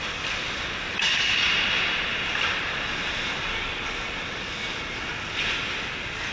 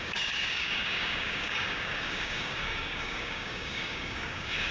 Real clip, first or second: first